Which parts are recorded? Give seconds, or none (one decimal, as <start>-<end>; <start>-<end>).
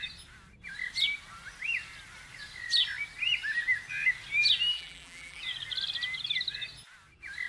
0.0-4.7; 5.4-7.5